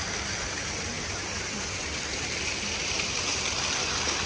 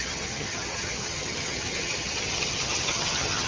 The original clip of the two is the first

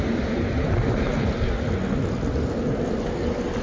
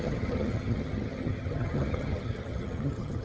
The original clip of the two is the first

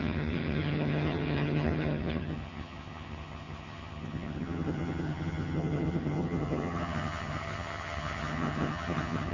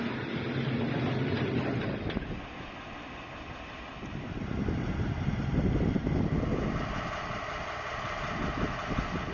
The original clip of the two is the second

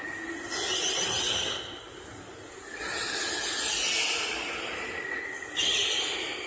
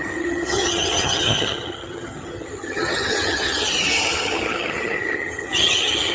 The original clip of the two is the first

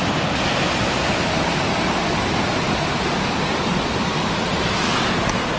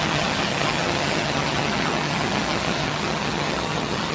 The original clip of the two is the first